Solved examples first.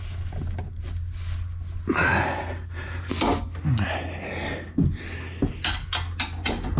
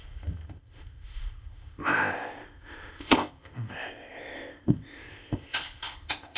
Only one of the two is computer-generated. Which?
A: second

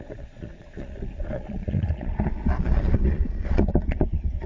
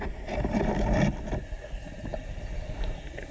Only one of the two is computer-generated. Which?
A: first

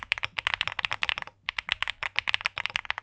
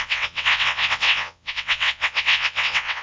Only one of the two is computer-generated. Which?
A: second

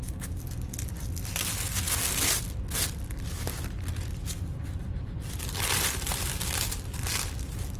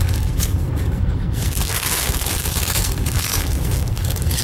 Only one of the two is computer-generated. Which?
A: second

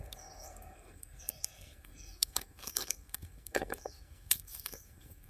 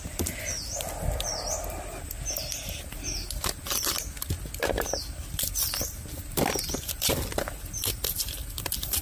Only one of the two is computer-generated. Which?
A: first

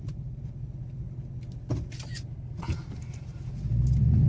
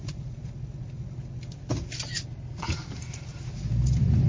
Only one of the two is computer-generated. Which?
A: second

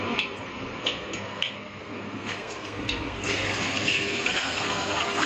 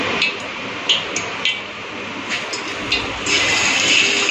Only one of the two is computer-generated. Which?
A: first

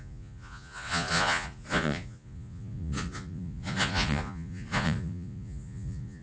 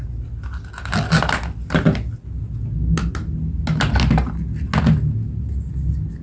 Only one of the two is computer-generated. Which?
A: first